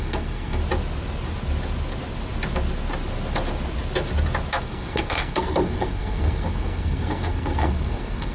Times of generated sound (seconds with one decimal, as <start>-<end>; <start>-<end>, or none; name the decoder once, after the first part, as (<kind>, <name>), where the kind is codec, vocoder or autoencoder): 0.0-0.6 (codec, SNAC); 4.6-8.3

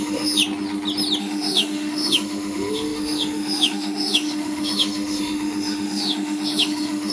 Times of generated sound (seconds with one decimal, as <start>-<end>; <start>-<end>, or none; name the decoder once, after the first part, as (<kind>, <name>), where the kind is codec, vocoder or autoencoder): 0.0-0.4 (autoencoder, DAC-VAE); 1.2-7.1

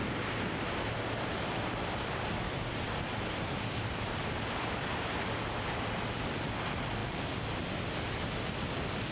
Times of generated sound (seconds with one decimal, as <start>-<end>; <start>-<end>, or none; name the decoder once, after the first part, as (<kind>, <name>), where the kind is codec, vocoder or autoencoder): 0.0-4.7 (vocoder, BigVGAN v2); 7.0-7.6

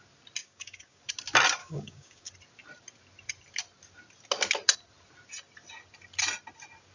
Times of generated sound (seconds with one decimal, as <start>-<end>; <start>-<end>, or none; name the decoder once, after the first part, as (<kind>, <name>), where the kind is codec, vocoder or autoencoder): 0.4-1.0 (codec, DAC); 1.6-2.3